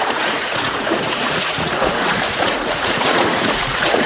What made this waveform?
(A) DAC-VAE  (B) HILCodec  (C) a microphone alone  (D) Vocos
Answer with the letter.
D